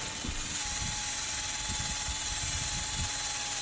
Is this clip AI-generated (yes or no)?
no